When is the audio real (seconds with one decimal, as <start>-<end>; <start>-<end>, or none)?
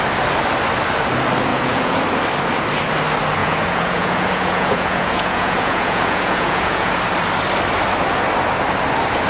0.0-1.5; 2.0-3.4; 6.9-9.3